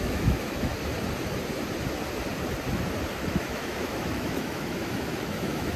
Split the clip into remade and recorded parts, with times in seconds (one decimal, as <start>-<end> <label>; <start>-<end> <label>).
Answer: 0.0-0.7 remade; 0.7-3.3 recorded; 3.3-5.8 remade